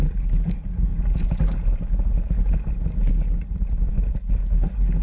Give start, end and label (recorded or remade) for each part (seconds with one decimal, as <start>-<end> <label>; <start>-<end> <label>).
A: 0.0-5.0 recorded